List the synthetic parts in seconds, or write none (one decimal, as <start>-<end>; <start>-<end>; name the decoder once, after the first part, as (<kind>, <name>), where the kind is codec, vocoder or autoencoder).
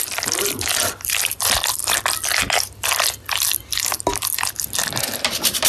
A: 0.0-1.8 (vocoder, BigVGAN v2); 5.0-5.7